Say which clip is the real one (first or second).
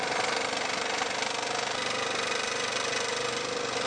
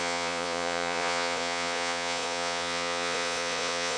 first